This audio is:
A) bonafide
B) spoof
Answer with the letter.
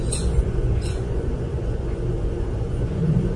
B